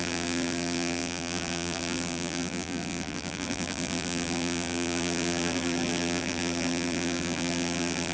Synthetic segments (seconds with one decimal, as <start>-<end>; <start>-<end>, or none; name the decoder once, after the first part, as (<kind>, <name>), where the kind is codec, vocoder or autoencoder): 0.0-8.1 (vocoder, BigVGAN v2)